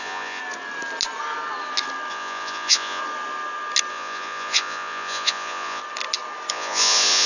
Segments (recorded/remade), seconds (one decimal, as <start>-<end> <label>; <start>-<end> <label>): 0.0-0.4 remade; 0.4-2.1 recorded; 2.1-3.0 remade; 3.0-3.9 recorded; 3.9-5.8 remade; 5.8-6.5 recorded; 6.5-7.3 remade